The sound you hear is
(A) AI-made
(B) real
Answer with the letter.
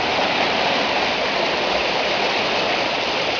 B